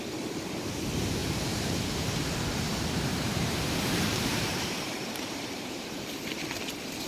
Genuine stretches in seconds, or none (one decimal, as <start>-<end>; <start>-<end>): 0.0-1.2; 2.3-3.1; 6.0-7.1